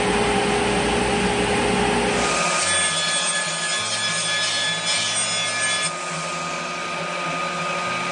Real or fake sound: real